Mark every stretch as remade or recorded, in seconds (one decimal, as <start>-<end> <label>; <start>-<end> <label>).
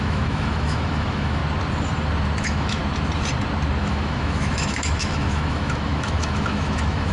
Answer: 0.0-1.4 remade; 1.4-2.4 recorded; 2.4-2.8 remade; 2.8-3.8 recorded; 3.8-7.1 remade